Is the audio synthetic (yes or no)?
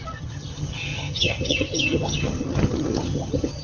yes